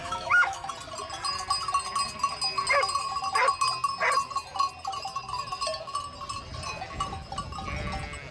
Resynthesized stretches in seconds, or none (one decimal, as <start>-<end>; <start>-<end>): 0.0-0.7